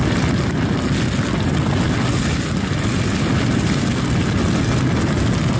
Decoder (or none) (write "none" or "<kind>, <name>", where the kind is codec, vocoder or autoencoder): none